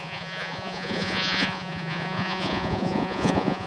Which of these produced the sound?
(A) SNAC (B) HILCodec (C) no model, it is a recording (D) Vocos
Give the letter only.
D